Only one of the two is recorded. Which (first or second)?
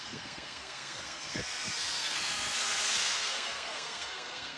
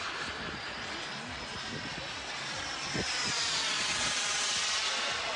second